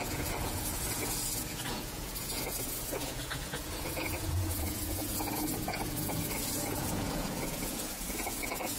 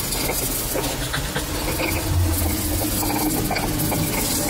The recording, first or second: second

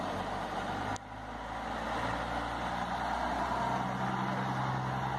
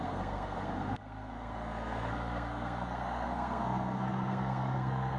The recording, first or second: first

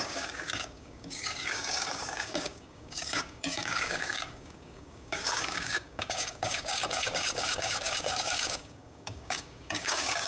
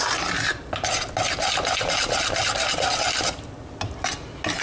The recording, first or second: second